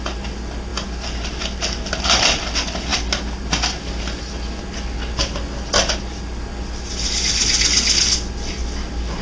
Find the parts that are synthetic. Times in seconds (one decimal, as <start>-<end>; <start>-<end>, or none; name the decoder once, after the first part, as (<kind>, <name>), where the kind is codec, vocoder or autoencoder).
none